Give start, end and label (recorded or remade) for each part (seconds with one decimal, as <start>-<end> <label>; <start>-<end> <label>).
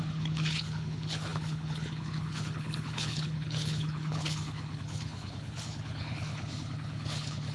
0.0-7.5 remade